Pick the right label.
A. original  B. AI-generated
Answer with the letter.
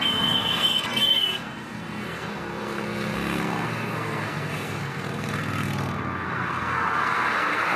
B